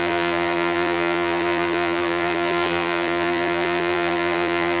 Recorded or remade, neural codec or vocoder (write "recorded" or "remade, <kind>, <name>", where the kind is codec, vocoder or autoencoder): remade, vocoder, BigVGAN v2